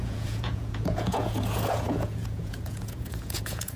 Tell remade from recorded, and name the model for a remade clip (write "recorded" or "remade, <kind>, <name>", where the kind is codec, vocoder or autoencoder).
remade, vocoder, Vocos